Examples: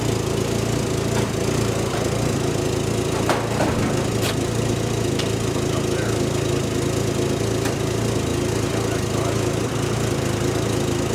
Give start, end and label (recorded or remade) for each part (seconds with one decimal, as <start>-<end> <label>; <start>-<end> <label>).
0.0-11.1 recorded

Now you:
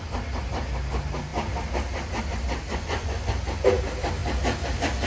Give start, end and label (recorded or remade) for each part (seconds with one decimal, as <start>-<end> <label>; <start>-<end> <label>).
0.0-2.7 recorded; 2.7-3.3 remade; 3.3-5.1 recorded

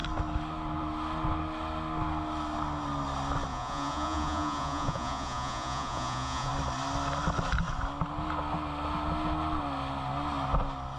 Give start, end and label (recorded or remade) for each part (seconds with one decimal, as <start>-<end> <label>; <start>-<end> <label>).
0.0-3.5 recorded; 3.5-6.5 remade; 6.5-11.0 recorded

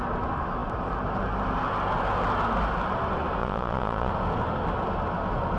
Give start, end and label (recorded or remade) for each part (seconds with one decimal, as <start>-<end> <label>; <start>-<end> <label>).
0.0-3.4 recorded; 3.4-4.1 remade; 4.1-5.6 recorded

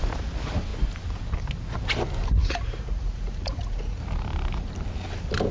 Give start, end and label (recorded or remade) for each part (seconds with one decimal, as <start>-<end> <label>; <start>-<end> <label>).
0.0-2.4 recorded; 2.4-4.0 remade; 4.0-5.5 recorded

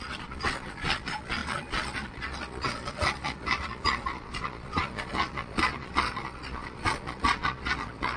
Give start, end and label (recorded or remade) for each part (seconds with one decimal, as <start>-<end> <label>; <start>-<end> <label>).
0.0-8.2 remade

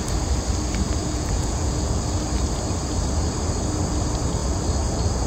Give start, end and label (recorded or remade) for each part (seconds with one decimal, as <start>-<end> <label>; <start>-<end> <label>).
0.0-1.0 recorded; 1.0-2.0 remade; 2.0-5.3 recorded

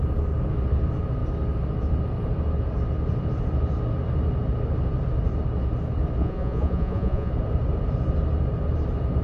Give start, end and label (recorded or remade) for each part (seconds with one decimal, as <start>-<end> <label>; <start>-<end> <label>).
0.0-6.2 recorded; 6.2-7.3 remade; 7.3-9.2 recorded